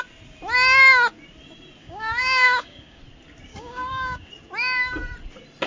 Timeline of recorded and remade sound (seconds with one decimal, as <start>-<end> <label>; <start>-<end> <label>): 0.0-1.8 recorded; 1.8-3.0 remade; 3.0-3.5 recorded; 3.5-4.3 remade; 4.3-5.7 recorded